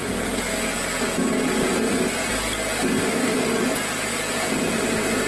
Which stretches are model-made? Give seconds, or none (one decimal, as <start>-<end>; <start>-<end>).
none

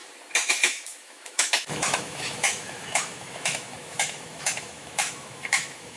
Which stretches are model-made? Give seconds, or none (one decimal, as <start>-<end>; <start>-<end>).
0.5-6.0

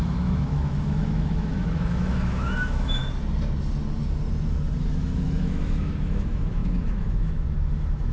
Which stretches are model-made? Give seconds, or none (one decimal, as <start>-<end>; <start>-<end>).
0.0-3.0; 4.8-8.1

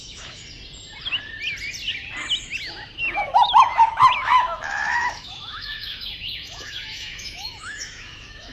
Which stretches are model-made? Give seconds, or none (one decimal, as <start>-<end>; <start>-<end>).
0.0-0.4; 3.0-8.5

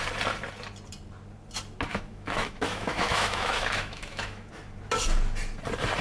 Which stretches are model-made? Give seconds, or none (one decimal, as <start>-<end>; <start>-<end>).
1.9-4.5

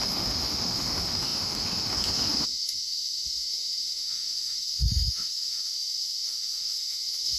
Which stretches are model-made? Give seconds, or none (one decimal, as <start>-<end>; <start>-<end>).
0.0-7.4

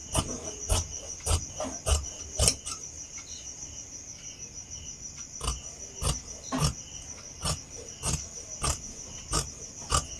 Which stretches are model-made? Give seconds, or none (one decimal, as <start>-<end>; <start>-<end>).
none

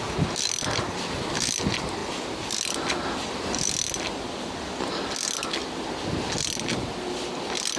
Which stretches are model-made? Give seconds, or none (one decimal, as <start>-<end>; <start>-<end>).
none